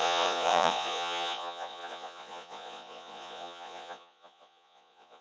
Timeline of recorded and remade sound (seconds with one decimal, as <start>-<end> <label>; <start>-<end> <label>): 0.0-5.2 remade